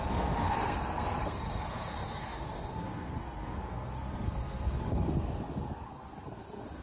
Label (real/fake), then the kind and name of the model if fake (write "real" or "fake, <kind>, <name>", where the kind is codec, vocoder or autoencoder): fake, codec, SNAC